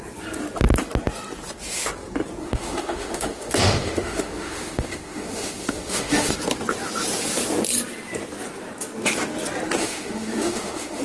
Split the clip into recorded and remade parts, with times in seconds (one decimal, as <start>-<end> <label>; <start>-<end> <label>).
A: 0.0-2.4 recorded; 2.4-6.3 remade; 6.3-9.8 recorded; 9.8-11.0 remade